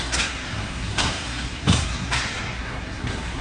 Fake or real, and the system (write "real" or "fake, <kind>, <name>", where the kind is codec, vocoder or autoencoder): fake, codec, SNAC